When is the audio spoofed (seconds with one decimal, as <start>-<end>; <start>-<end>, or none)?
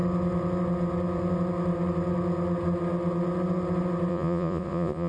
4.1-5.1